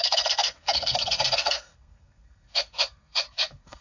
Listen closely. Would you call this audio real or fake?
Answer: fake